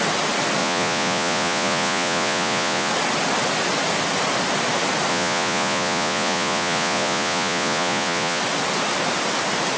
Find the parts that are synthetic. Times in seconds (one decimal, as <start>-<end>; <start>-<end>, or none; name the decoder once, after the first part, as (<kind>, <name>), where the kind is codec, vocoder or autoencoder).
0.6-2.9 (vocoder, Vocos); 5.1-8.4